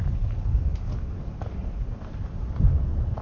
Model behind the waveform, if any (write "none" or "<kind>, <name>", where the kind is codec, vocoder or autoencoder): none